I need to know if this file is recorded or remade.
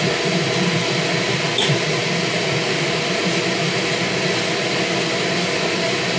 recorded